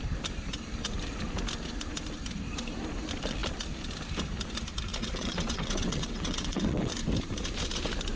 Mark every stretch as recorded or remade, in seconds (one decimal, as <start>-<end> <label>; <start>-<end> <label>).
0.0-4.9 recorded; 4.9-6.9 remade; 6.9-8.2 recorded